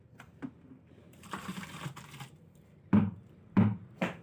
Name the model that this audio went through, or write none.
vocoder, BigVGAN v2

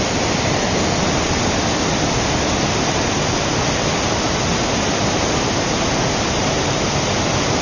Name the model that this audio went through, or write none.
none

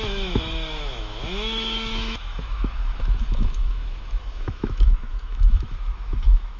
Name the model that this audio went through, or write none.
autoencoder, DAC-VAE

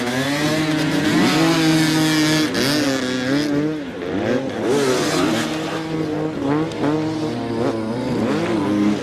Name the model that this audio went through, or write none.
none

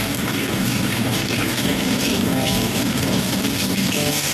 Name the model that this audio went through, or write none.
codec, DAC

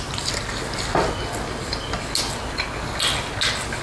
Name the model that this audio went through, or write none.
none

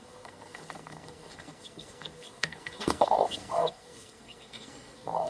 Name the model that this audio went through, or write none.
codec, SNAC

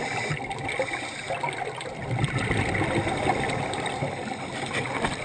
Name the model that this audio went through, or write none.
none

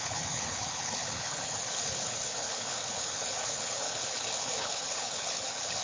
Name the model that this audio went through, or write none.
codec, HILCodec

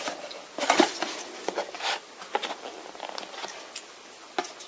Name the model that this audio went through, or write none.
none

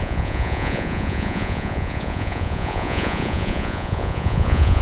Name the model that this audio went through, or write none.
vocoder, Vocos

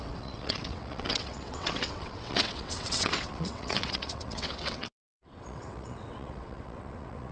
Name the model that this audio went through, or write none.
vocoder, WaveNeXt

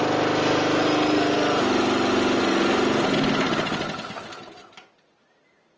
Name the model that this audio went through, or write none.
none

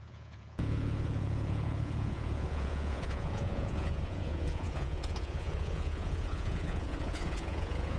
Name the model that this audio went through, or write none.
vocoder, Vocos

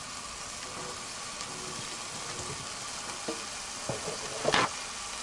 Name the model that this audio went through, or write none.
none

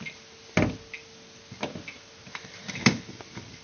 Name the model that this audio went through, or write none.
none